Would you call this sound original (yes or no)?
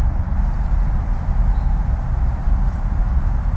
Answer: yes